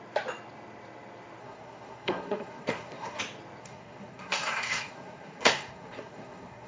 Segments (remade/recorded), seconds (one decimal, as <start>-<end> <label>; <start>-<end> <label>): 0.0-1.4 recorded; 1.4-3.2 remade; 3.2-3.6 recorded; 3.6-6.7 remade